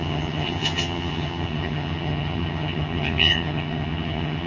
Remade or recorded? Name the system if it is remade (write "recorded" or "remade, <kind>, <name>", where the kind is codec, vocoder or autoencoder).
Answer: remade, vocoder, HiFi-GAN